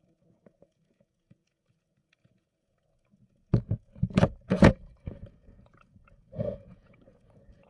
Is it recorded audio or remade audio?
remade